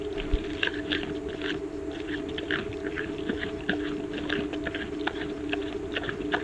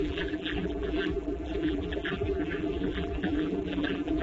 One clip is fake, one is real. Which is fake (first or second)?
second